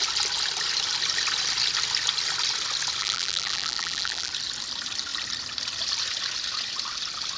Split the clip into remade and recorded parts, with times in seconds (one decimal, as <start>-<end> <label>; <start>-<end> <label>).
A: 0.0-3.0 recorded; 3.0-4.3 remade; 4.3-7.4 recorded